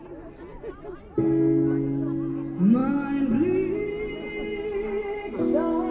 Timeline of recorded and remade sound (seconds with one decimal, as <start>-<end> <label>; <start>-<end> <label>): 0.0-5.9 recorded